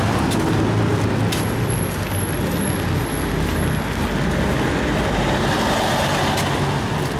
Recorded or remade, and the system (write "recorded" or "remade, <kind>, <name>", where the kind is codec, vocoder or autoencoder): recorded